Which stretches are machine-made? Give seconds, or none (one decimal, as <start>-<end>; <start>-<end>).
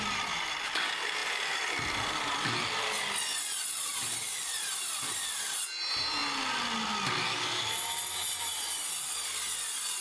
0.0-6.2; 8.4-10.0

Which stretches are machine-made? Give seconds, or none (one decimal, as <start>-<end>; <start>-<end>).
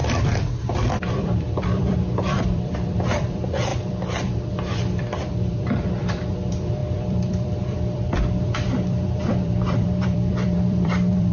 0.0-11.3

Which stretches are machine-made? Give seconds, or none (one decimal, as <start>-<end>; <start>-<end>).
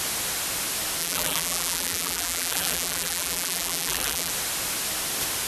1.0-4.3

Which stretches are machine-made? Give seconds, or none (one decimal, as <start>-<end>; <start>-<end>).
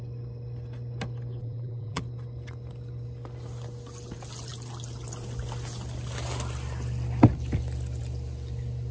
1.4-2.0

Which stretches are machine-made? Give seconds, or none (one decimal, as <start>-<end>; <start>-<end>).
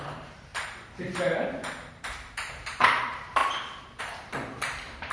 0.0-3.4; 4.0-5.1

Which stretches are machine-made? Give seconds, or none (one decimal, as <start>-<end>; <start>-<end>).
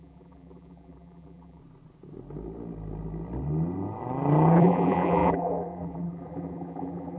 0.0-1.6; 4.6-7.2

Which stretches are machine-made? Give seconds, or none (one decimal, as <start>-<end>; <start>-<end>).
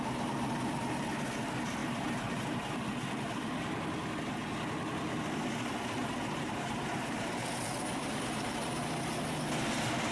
1.8-2.9; 6.0-7.6